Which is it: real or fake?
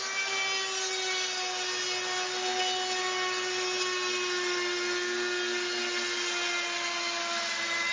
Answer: real